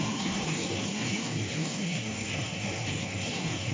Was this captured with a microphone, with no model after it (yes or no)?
no